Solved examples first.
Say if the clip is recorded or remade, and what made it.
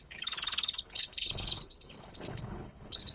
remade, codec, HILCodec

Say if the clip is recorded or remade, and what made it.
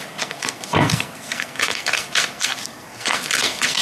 remade, codec, SNAC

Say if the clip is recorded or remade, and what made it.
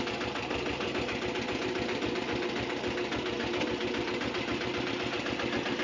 recorded